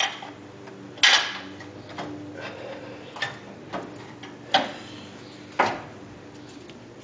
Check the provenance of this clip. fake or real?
real